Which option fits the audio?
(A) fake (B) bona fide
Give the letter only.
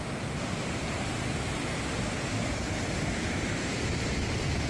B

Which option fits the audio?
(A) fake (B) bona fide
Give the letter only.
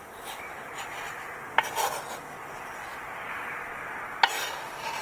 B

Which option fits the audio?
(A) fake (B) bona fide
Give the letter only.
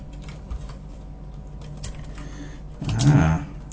B